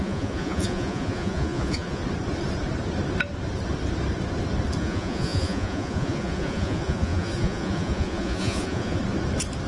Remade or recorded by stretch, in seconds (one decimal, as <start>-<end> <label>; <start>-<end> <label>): 0.0-2.0 remade; 2.0-4.8 recorded; 4.8-9.0 remade; 9.0-9.7 recorded